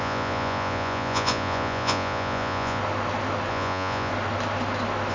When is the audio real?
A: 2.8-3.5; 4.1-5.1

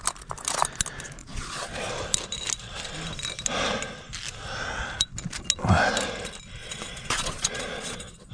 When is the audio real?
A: 0.0-1.2; 1.9-6.6

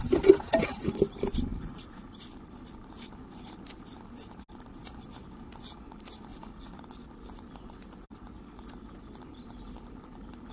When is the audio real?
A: 0.0-1.5; 2.1-6.3; 6.8-10.5

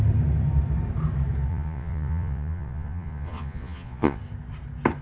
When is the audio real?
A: 0.0-1.5; 4.2-5.0

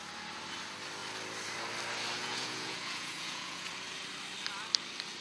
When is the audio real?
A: 0.0-2.2; 3.7-5.2

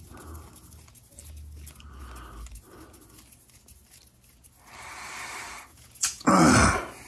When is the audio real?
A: 0.0-5.7; 6.3-7.1

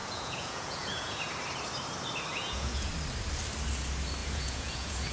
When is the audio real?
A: 1.3-2.3; 2.9-4.2

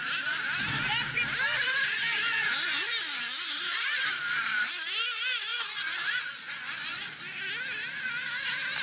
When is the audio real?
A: 0.0-5.5; 7.2-8.8